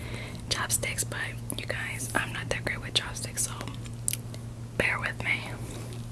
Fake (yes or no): no